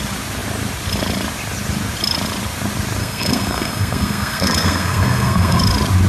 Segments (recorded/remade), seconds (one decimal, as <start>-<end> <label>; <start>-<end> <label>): 0.0-3.0 recorded; 3.0-5.6 remade; 5.6-6.1 recorded